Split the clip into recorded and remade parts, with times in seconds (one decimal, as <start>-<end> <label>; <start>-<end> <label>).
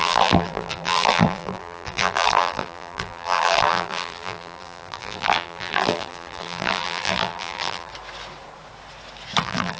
0.0-7.9 remade; 7.9-9.4 recorded; 9.4-9.8 remade